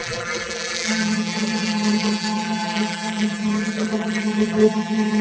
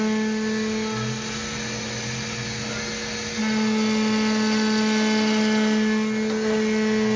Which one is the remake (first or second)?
first